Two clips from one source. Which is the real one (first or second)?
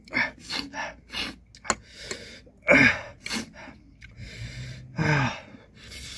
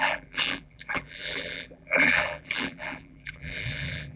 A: first